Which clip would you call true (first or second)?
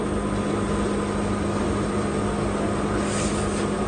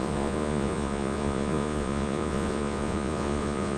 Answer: first